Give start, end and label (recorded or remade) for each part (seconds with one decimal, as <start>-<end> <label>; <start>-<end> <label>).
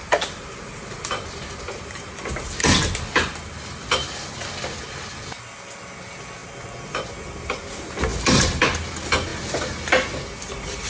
0.0-10.9 recorded